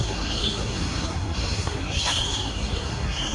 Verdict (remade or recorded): remade